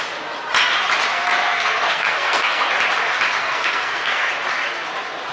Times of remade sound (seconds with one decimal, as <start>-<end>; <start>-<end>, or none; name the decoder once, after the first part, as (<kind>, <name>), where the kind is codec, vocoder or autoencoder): 1.1-2.7 (codec, SNAC); 3.4-4.3